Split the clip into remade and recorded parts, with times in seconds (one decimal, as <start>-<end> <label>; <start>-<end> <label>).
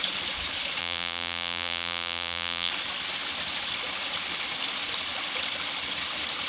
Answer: 0.0-0.8 recorded; 0.8-2.7 remade; 2.7-6.5 recorded